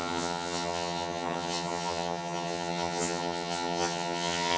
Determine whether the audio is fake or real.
fake